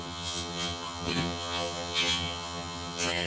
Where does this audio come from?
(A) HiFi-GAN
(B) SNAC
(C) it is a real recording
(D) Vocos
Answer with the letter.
A